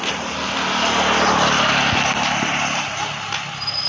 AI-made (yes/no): no